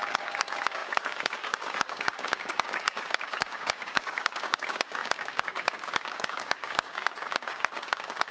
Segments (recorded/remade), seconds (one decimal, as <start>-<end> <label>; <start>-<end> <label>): 0.0-8.3 remade